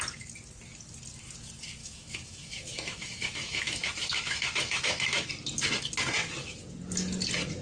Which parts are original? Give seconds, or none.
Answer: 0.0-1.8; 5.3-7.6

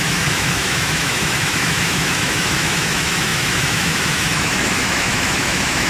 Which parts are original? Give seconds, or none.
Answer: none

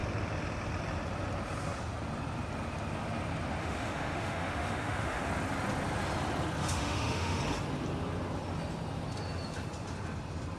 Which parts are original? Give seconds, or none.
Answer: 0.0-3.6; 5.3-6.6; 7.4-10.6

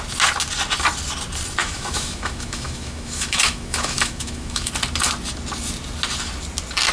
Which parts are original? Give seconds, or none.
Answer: 0.0-1.6; 4.7-6.9

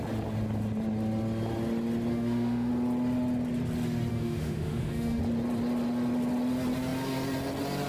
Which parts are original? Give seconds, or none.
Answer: 0.0-2.1; 2.7-4.1; 5.2-7.9

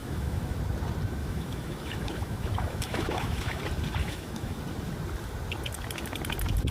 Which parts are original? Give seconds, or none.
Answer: 0.6-1.2; 3.6-4.0; 4.6-6.7

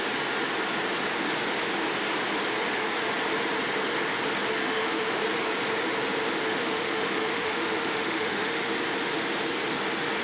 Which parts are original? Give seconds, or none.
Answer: 0.0-4.6; 5.2-6.5; 8.7-10.2

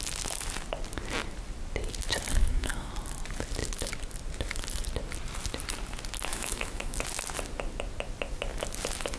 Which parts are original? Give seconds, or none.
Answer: 0.0-2.4; 2.9-6.3; 7.0-9.2